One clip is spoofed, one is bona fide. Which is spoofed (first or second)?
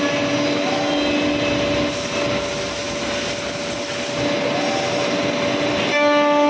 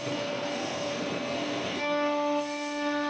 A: second